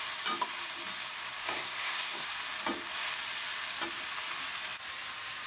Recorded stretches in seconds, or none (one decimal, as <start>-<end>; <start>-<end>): 0.0-1.4; 2.4-5.5

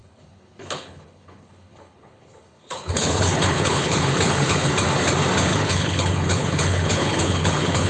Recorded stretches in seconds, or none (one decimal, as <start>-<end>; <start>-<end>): 4.7-5.5

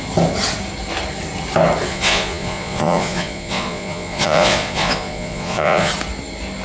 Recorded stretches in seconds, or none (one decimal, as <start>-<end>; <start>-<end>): 0.0-1.9; 5.9-6.6

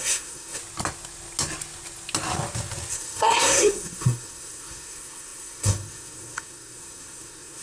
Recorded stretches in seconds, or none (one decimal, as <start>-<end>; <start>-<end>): 0.6-2.9

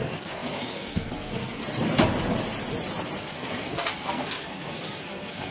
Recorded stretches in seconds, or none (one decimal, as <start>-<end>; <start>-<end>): 1.6-3.2

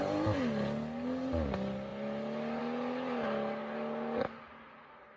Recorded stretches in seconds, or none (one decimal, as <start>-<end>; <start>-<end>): 0.0-5.2

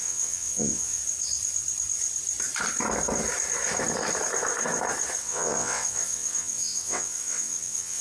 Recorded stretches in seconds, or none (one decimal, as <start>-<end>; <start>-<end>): 1.0-5.2